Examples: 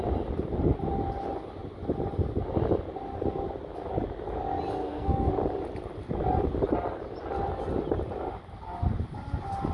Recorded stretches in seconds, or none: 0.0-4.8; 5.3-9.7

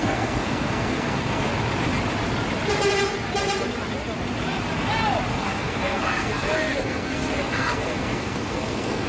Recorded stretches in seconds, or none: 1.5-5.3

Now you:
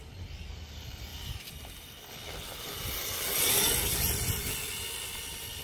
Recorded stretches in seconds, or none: 0.0-5.6

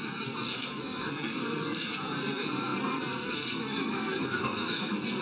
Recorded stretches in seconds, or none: none

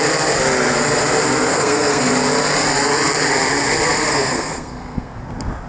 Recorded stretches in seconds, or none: 0.0-1.5; 2.1-4.1; 5.2-5.7